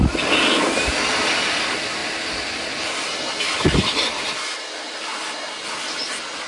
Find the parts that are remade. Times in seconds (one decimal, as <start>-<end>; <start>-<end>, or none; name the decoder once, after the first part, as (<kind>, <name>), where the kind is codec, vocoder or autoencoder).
none